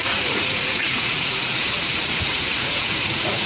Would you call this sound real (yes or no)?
no